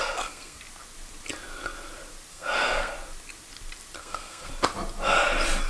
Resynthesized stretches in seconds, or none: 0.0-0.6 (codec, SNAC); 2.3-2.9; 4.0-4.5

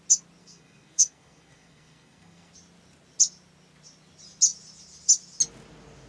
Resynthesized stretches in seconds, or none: 0.4-2.5 (codec, SNAC)

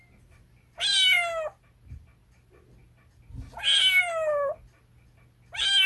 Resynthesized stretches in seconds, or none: none

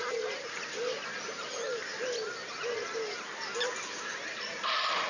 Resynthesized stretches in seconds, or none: none

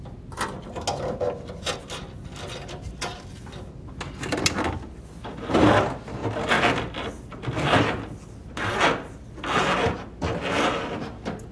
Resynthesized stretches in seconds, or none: none